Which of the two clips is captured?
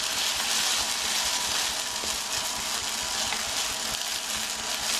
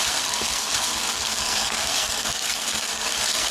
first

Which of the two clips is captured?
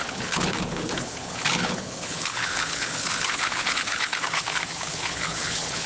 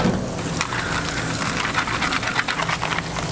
second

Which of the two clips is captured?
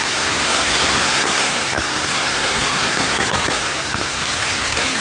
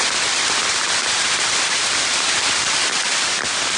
second